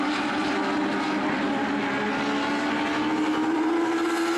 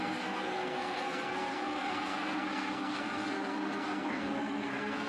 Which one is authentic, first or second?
first